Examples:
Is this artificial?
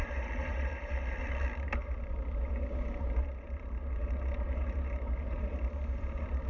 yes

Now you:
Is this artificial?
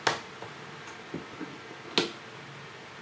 no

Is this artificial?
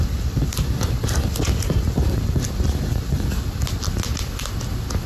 no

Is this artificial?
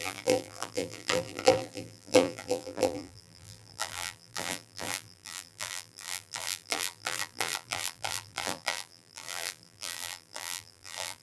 yes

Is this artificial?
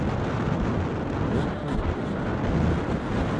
no